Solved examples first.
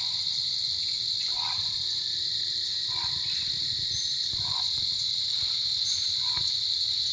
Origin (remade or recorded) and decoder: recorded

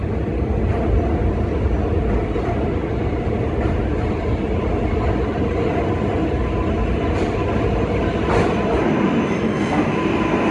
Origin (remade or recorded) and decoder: recorded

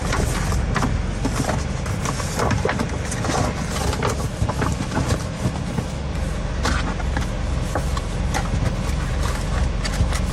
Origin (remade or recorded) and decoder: recorded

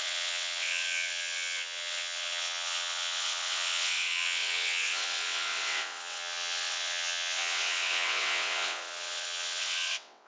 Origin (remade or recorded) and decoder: remade, vocoder, WaveNeXt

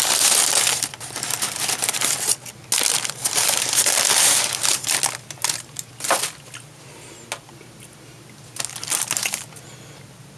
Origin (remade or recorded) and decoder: recorded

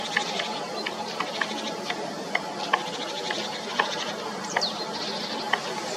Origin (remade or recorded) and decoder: recorded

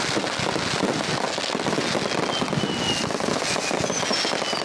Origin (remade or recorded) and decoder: recorded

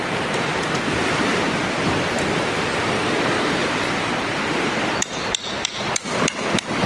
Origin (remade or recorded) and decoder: remade, vocoder, BigVGAN v2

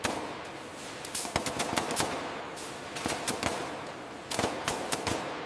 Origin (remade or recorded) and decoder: recorded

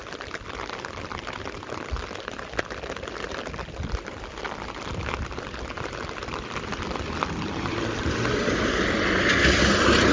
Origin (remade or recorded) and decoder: recorded